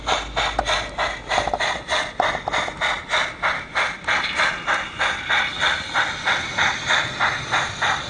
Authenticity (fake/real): real